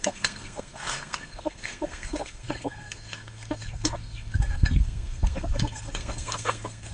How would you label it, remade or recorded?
remade